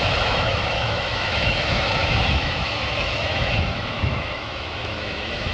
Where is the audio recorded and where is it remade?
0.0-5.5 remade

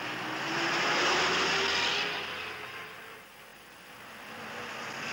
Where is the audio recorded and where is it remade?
0.0-5.1 recorded

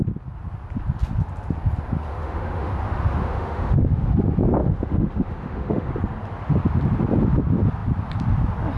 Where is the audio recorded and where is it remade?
0.0-2.1 recorded; 2.1-2.7 remade; 2.7-3.2 recorded; 3.2-4.1 remade; 4.1-4.6 recorded; 4.6-5.9 remade; 5.9-8.8 recorded

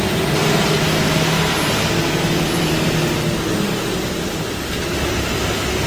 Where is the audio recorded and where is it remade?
0.0-5.9 recorded

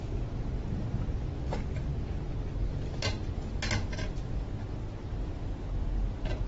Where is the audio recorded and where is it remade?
0.0-6.5 recorded

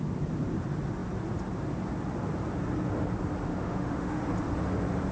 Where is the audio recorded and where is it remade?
0.0-3.5 recorded; 3.5-4.2 remade; 4.2-5.1 recorded